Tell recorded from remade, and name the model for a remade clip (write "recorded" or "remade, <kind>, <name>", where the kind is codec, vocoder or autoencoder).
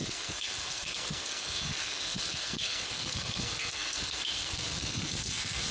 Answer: remade, codec, SNAC